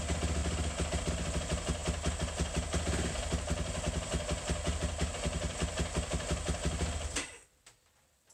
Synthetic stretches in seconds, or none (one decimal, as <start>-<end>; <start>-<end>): none